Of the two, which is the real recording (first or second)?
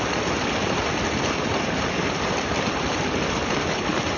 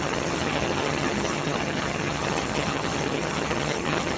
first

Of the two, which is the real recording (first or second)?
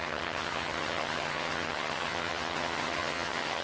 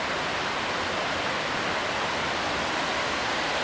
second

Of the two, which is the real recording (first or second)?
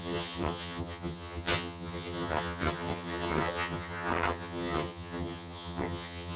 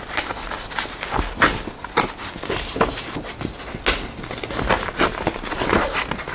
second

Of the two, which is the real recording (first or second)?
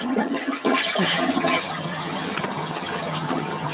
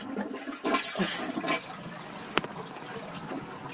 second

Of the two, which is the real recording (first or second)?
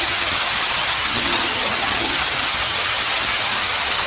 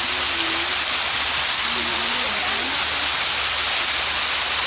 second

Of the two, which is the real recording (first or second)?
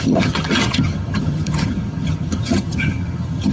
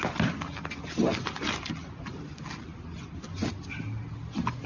second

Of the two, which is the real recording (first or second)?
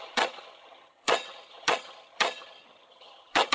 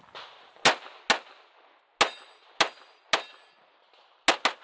second